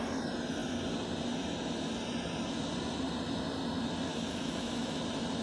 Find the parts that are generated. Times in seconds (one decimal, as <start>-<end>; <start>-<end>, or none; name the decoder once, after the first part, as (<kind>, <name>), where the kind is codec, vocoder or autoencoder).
4.1-5.0 (autoencoder, DAC-VAE)